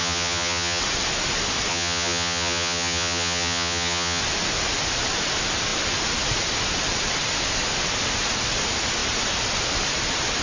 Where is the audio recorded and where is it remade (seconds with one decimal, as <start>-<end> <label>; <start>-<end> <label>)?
0.0-0.8 remade; 0.8-1.7 recorded; 1.7-4.2 remade; 4.2-10.4 recorded